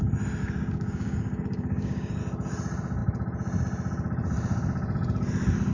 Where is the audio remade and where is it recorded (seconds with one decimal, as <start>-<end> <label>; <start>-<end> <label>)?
0.0-0.4 recorded; 0.4-2.2 remade; 2.2-5.7 recorded